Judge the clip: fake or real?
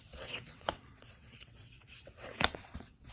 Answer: fake